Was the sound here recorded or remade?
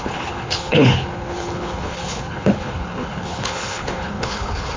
remade